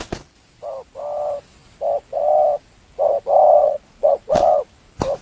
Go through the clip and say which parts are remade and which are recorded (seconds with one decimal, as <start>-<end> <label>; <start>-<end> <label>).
0.0-3.6 recorded; 3.6-4.6 remade; 4.6-5.2 recorded